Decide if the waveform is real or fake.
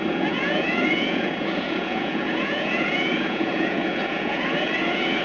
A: fake